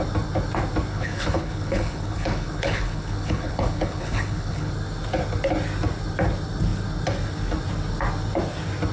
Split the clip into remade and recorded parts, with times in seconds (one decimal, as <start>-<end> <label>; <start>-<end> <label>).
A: 0.0-0.9 recorded; 0.9-4.7 remade; 4.7-8.9 recorded